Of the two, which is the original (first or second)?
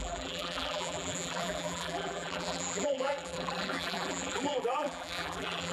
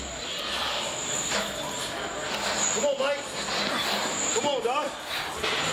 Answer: second